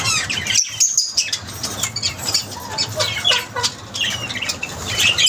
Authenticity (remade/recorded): recorded